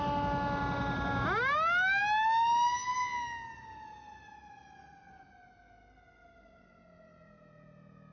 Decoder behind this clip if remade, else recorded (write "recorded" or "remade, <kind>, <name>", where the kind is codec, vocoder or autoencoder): recorded